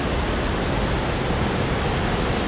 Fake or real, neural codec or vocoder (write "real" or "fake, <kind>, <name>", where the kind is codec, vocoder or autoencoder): real